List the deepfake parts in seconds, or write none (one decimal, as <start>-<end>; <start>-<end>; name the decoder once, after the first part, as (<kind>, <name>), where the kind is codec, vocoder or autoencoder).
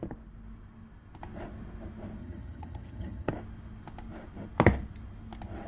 2.2-3.3 (vocoder, HiFi-GAN)